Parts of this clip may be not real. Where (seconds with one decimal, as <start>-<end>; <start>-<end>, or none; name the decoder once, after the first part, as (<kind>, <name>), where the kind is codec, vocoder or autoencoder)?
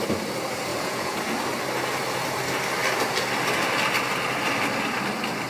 0.7-1.2 (vocoder, Vocos)